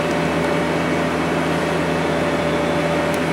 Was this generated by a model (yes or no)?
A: no